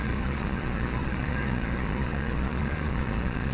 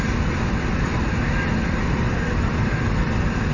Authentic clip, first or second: second